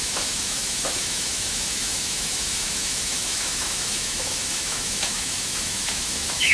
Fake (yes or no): yes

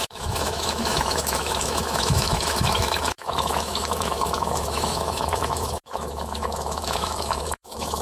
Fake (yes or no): yes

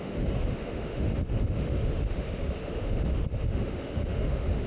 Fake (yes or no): yes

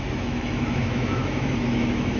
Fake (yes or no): yes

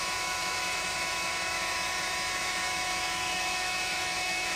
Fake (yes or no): yes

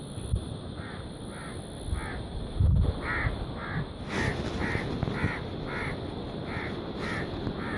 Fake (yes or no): no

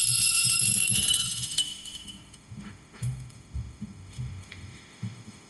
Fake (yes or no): yes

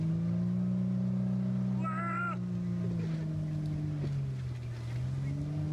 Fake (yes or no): no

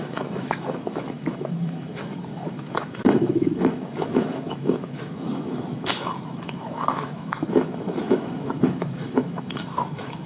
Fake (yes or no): yes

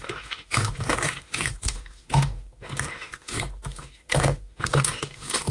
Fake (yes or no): yes